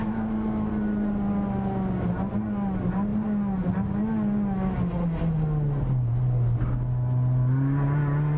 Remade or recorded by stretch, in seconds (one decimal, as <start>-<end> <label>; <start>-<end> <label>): 0.0-0.7 remade; 0.7-8.4 recorded